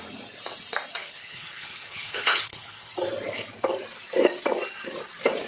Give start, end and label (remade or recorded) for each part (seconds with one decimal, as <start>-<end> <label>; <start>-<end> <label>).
0.0-1.0 recorded; 1.0-2.9 remade; 2.9-5.5 recorded

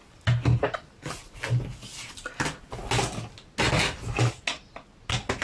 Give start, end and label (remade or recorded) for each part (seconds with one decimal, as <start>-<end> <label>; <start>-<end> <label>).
0.0-5.4 recorded